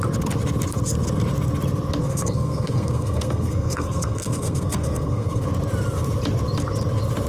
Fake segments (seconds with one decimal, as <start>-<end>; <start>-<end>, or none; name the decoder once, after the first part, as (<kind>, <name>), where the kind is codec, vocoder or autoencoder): 2.0-5.5 (codec, SNAC)